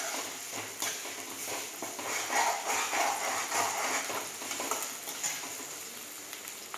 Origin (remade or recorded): recorded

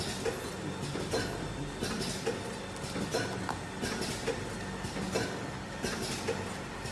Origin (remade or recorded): recorded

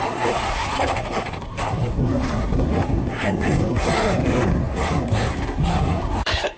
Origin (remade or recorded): remade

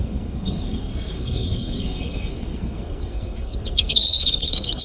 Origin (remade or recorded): remade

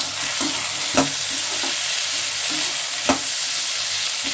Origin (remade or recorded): recorded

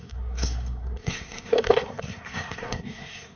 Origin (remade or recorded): remade